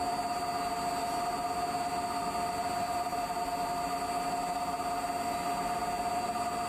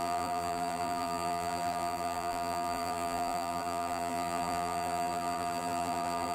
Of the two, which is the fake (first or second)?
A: second